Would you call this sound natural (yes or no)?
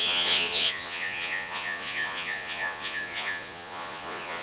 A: no